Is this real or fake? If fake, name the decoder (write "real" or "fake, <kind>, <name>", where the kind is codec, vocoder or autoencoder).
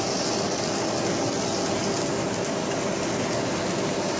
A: real